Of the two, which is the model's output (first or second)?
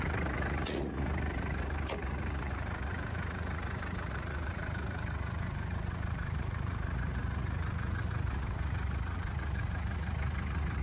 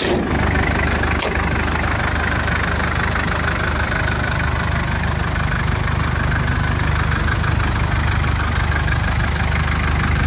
first